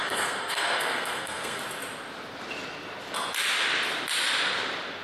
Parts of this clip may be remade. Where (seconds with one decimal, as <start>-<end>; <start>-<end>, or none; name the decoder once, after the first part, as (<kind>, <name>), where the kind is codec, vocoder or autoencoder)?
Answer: 0.0-1.6 (codec, SNAC)